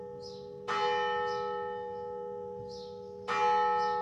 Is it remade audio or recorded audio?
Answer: recorded